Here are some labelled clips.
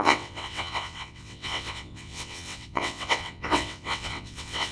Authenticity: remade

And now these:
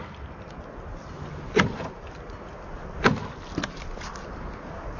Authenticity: recorded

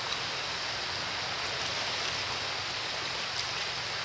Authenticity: recorded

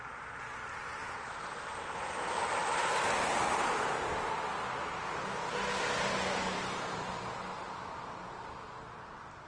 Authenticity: recorded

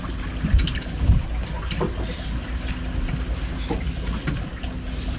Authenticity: recorded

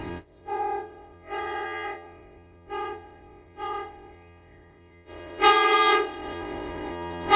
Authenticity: remade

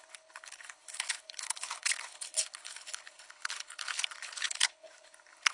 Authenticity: remade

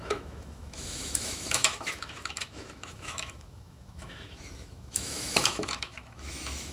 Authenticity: remade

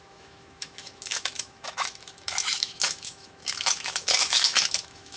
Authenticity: remade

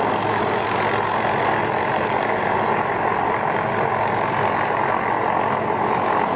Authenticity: recorded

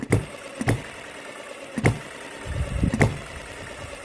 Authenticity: recorded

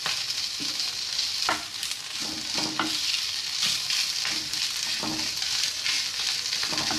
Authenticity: recorded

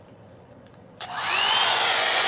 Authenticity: remade